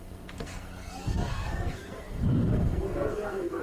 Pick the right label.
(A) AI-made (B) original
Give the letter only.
A